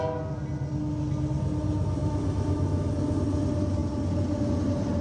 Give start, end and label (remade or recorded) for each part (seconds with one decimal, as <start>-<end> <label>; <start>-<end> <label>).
0.0-2.0 recorded; 2.0-2.9 remade; 2.9-5.0 recorded